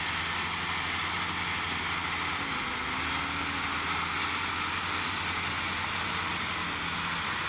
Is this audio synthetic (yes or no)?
no